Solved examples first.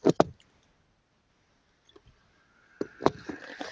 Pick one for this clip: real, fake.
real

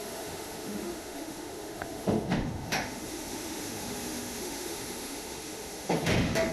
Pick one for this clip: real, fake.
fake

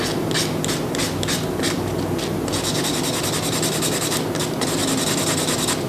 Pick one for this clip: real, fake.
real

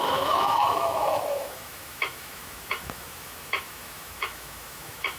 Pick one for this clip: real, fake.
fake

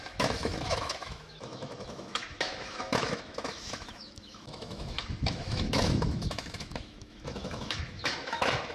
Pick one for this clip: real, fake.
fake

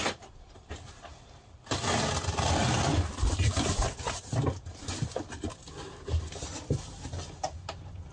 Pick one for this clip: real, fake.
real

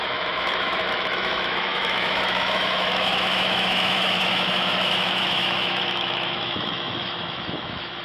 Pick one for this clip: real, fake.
fake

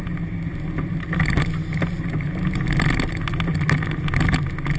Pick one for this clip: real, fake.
real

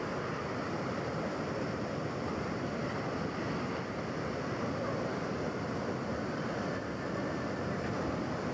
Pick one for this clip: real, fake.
real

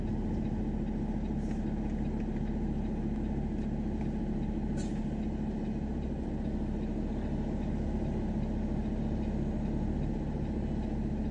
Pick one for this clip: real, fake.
real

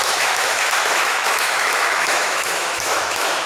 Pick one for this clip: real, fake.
fake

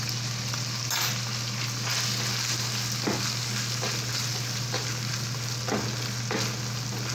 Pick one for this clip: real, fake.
real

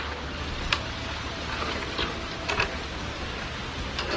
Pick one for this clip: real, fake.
real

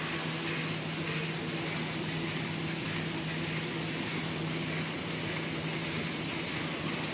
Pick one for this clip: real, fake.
real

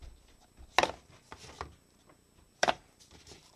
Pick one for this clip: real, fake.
real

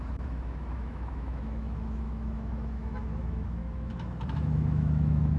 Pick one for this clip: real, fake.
fake